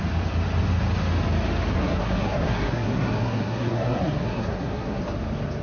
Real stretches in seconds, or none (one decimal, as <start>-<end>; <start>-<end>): 0.0-1.7; 5.0-5.6

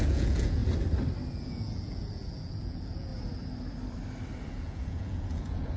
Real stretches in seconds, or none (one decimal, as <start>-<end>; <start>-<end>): 0.6-1.3; 3.1-4.5